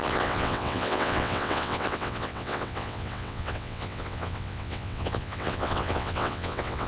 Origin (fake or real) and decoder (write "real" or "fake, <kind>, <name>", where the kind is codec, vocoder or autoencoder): fake, vocoder, WaveNeXt